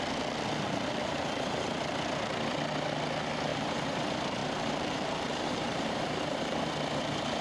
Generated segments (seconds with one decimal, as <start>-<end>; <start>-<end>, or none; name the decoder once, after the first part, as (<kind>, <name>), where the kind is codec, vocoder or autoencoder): 3.5-4.0 (vocoder, BigVGAN v2); 4.4-6.6

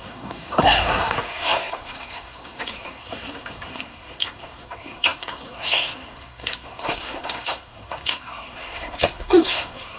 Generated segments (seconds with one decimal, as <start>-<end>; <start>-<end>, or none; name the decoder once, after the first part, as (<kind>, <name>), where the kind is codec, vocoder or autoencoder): 0.0-10.0 (codec, SNAC)

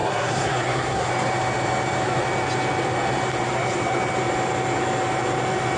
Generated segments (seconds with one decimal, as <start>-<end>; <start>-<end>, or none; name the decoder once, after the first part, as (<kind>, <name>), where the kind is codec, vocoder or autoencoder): 0.0-1.1 (codec, SNAC)

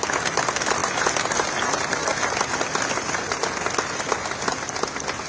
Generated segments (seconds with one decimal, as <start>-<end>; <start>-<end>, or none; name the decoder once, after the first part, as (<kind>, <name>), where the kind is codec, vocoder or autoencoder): none

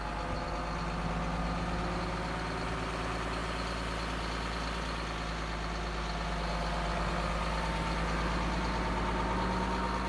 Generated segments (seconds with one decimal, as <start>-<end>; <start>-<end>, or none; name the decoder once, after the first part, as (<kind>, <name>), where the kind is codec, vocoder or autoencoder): none

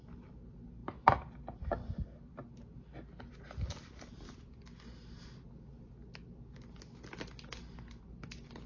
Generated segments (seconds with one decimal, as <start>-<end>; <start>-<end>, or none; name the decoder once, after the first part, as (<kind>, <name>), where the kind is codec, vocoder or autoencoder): none

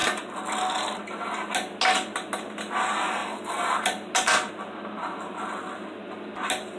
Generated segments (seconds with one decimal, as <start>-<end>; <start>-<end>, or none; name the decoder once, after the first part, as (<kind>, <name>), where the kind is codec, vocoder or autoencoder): none

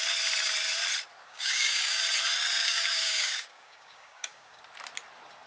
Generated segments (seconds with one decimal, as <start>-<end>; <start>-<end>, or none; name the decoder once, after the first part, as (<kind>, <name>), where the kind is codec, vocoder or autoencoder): 1.2-2.0 (codec, DAC); 2.6-4.6